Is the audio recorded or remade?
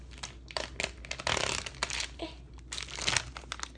recorded